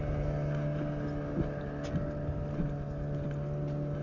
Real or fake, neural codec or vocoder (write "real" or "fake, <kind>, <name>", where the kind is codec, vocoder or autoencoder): real